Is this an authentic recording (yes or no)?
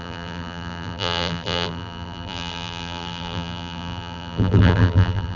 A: no